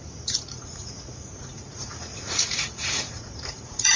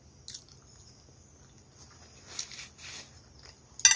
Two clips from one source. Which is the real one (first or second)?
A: second